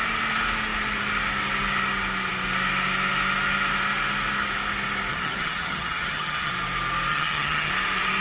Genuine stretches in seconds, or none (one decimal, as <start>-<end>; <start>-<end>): 0.0-5.1; 6.5-7.1; 7.7-8.2